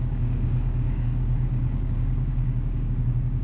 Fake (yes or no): yes